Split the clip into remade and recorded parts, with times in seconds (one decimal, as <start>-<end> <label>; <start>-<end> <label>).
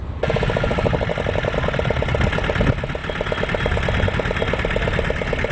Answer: 0.0-5.5 recorded